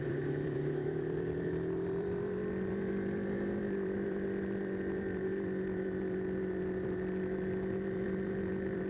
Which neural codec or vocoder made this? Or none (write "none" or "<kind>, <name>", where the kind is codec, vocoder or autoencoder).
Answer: vocoder, BigVGAN v2